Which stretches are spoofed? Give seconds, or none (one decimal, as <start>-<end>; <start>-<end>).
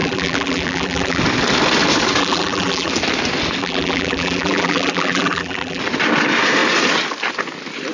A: 0.0-1.2; 2.2-2.9; 3.6-5.8